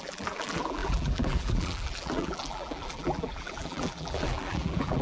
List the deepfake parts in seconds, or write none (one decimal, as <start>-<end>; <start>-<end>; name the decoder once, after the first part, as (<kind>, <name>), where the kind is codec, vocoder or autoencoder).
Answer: 0.0-5.0 (vocoder, BigVGAN v2)